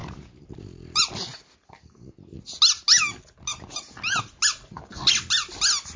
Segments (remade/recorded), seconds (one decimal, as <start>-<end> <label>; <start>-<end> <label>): 0.0-1.2 remade; 1.2-6.0 recorded